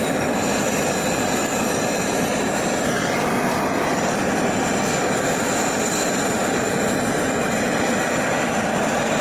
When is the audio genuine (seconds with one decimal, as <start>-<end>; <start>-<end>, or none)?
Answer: 0.0-9.2

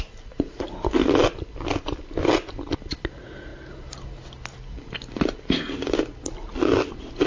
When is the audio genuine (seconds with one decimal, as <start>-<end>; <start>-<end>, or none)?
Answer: 0.0-7.3

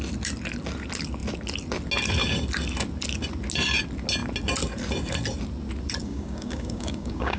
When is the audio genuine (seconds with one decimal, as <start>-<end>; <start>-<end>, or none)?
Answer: 0.0-6.0

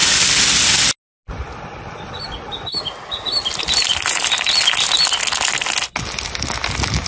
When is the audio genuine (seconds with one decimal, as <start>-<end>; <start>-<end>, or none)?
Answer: 0.0-7.1

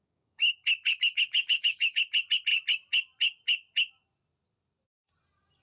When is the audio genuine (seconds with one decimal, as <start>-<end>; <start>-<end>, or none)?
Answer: 0.5-1.1; 2.0-5.6